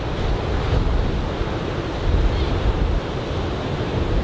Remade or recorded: recorded